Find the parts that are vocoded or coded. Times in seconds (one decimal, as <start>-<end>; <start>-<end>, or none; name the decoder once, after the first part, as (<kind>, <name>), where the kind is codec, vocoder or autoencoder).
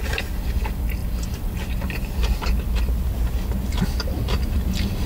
none